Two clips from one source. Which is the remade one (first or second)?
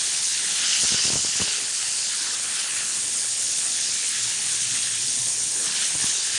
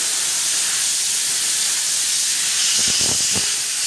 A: first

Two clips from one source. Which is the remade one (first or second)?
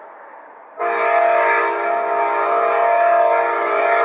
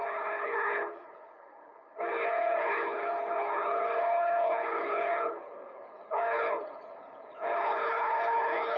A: second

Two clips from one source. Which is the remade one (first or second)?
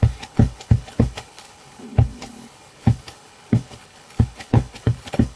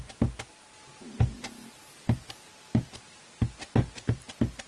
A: first